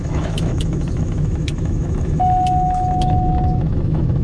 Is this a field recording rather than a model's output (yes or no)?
no